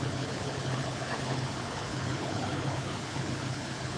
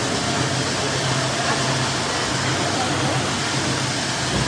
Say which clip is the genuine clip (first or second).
second